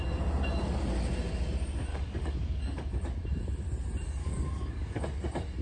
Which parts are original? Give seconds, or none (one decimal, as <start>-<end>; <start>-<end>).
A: 0.0-1.9; 2.9-4.2; 5.0-5.6